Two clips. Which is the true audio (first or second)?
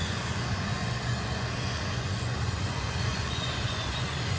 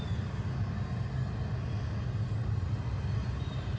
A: second